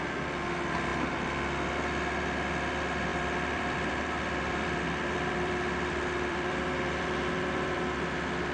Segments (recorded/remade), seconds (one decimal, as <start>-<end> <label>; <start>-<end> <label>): 0.0-3.1 recorded; 3.1-7.9 remade; 7.9-8.5 recorded